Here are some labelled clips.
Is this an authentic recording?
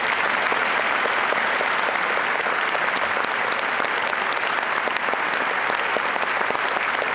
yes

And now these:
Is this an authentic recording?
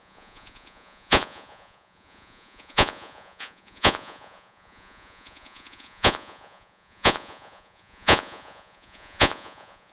no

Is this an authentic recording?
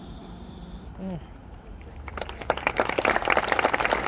no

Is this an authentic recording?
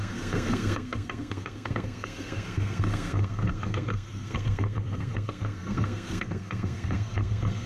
no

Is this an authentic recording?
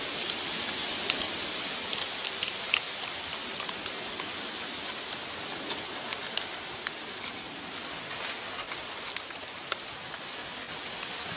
yes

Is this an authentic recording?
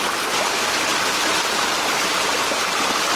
yes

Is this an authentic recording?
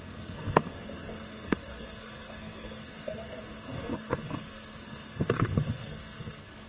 no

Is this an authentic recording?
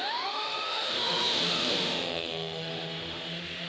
no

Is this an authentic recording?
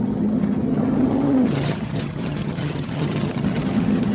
no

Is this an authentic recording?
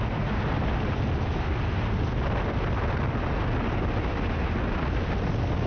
yes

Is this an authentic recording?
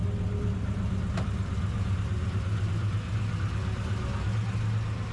yes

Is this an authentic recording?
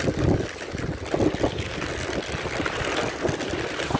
yes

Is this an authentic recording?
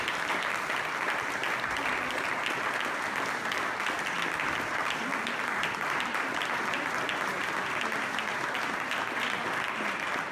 yes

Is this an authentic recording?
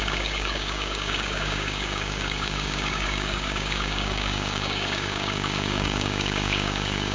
no